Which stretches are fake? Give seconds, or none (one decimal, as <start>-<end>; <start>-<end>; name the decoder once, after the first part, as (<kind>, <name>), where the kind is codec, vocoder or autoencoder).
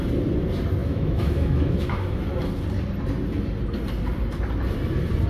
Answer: 0.8-2.2 (autoencoder, DAC-VAE)